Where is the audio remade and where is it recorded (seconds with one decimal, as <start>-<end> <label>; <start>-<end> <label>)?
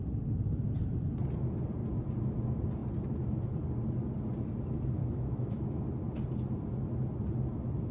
0.0-5.0 recorded; 5.0-5.8 remade; 5.8-7.9 recorded